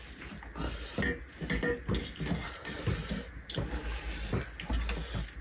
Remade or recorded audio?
recorded